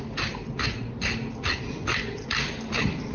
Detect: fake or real real